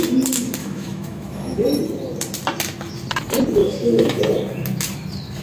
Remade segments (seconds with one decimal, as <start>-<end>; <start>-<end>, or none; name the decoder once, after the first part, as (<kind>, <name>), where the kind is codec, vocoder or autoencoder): 0.6-1.6 (autoencoder, DAC-VAE); 3.6-4.2